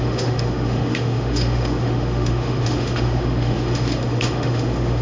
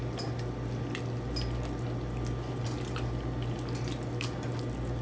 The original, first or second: second